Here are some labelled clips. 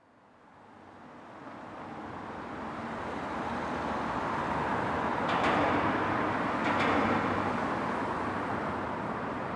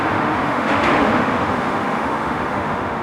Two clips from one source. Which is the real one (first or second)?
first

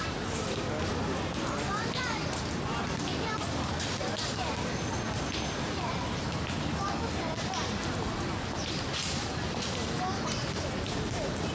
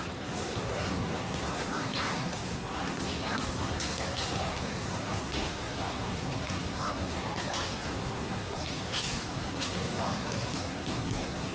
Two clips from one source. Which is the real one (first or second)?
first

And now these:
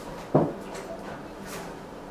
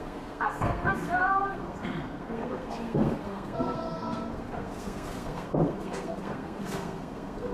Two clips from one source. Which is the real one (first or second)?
first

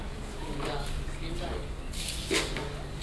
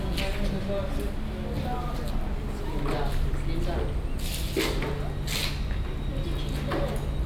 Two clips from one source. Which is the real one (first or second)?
second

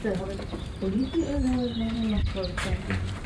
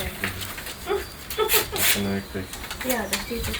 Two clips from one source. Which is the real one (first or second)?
second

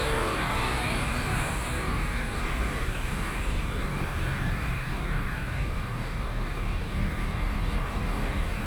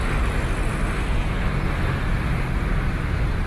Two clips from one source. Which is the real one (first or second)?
second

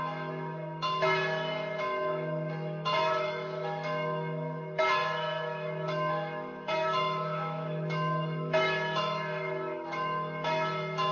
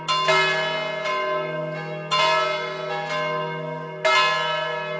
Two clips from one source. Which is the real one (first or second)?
second